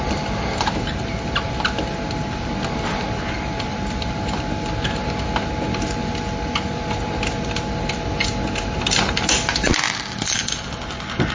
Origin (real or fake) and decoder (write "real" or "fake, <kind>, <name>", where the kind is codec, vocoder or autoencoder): real